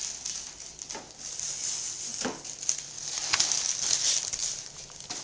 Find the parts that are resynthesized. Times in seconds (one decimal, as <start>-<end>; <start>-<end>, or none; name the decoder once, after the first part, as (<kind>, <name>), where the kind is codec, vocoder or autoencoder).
none